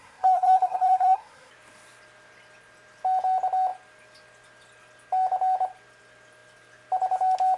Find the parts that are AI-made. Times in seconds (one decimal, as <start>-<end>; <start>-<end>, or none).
0.0-1.5